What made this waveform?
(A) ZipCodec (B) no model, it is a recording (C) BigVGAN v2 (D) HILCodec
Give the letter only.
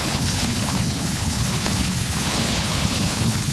D